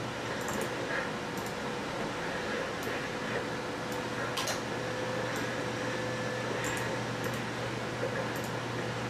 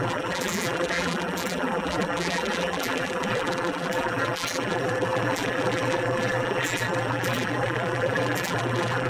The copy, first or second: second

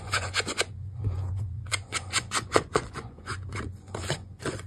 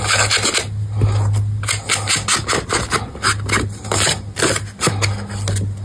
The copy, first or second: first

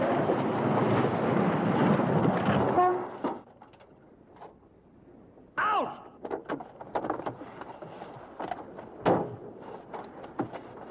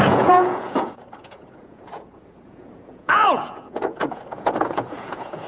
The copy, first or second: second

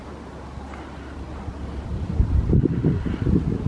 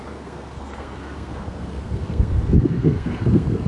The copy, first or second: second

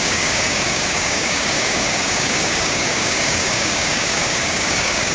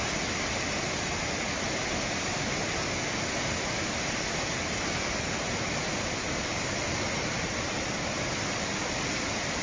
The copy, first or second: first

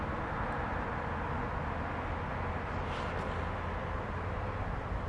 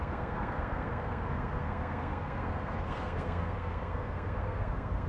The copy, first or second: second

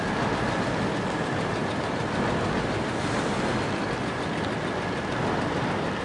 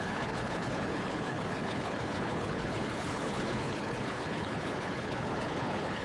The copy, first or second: second